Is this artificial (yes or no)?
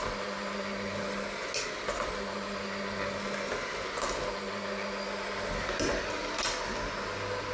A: no